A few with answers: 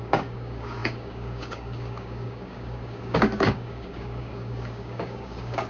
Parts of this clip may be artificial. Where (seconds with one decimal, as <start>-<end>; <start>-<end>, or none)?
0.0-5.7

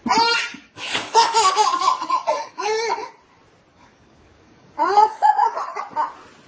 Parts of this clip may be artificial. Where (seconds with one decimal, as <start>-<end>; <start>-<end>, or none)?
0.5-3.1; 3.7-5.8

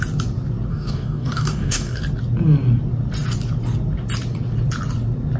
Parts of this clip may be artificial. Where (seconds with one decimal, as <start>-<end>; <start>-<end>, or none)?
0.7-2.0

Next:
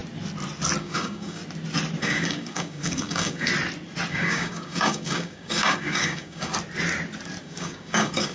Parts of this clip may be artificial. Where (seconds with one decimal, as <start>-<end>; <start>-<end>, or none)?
0.8-1.4; 2.0-3.5; 4.1-6.5; 7.4-8.3

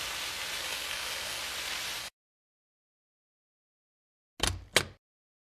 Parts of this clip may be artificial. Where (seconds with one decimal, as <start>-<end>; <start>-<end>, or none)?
0.6-1.4; 2.0-2.5